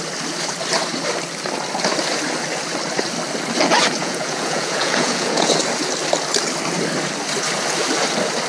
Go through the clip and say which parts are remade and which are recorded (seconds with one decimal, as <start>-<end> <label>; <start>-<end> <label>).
0.0-4.0 recorded; 4.0-5.5 remade; 5.5-8.5 recorded